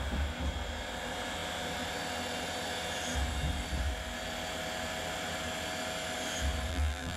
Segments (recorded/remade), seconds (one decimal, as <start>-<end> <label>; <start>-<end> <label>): 0.0-6.7 recorded; 6.7-7.2 remade